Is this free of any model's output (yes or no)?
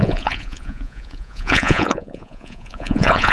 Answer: no